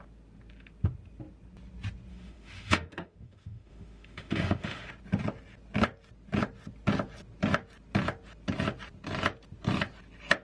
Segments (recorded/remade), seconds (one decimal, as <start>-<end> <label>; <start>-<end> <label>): 0.0-2.1 recorded; 2.1-4.9 remade; 4.9-10.4 recorded